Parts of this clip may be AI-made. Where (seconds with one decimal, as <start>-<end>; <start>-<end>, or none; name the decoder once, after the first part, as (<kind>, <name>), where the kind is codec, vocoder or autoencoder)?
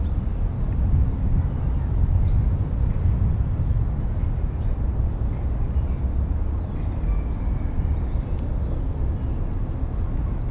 4.9-6.5 (vocoder, BigVGAN v2)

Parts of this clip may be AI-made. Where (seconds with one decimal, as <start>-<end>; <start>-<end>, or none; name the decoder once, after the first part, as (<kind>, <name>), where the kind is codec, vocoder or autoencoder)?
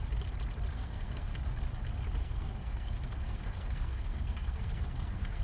0.7-1.3 (codec, SNAC); 2.2-5.4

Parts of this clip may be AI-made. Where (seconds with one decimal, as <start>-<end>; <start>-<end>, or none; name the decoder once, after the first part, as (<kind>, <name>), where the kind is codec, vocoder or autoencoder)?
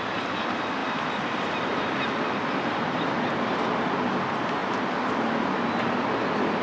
none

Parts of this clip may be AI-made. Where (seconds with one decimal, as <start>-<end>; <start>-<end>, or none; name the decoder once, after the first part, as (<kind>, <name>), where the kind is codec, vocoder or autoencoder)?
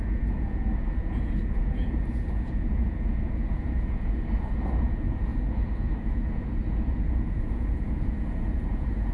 0.0-9.1 (vocoder, Vocos)